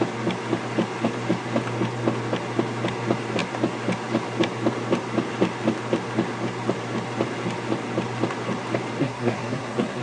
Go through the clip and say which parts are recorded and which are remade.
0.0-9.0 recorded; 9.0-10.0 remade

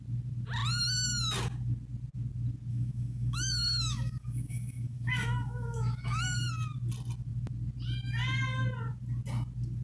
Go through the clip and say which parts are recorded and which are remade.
0.0-2.7 recorded; 2.7-6.5 remade; 6.5-9.8 recorded